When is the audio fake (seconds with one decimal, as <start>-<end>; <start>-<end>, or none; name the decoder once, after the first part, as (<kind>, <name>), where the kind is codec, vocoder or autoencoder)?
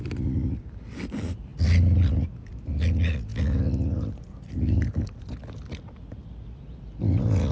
none